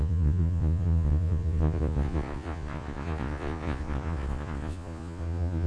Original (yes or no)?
no